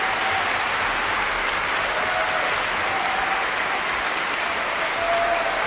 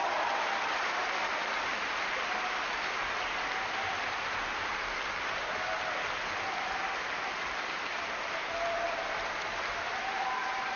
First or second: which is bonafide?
first